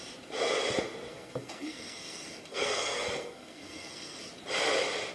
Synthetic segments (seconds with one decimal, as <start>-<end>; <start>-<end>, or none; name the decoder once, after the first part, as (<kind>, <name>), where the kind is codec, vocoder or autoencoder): 1.1-4.2 (codec, SNAC)